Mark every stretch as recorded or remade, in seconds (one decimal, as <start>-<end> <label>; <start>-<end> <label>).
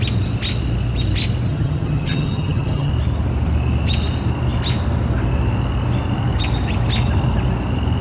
0.0-1.5 recorded; 1.5-2.9 remade; 2.9-8.0 recorded